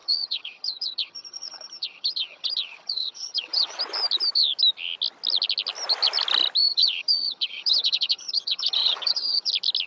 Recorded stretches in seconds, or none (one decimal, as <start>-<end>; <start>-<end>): 3.8-6.7; 9.5-9.9